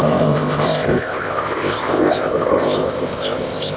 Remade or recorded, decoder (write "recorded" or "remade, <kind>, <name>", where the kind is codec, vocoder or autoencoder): remade, codec, ZipCodec